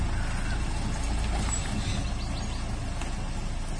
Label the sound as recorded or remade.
recorded